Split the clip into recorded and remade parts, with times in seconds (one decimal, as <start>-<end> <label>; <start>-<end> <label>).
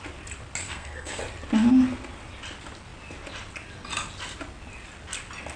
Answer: 0.0-0.6 recorded; 0.6-1.2 remade; 1.2-5.6 recorded